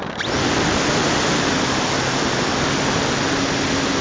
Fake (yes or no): no